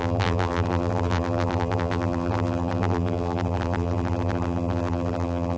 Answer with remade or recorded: remade